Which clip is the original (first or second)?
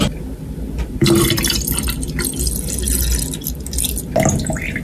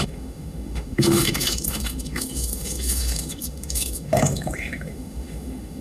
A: first